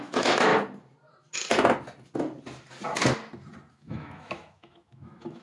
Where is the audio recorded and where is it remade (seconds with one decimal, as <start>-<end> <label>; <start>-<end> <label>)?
0.0-0.5 remade; 0.5-3.7 recorded; 3.7-5.4 remade